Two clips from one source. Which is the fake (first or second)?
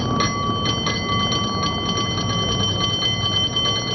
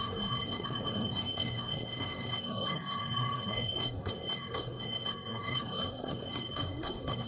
second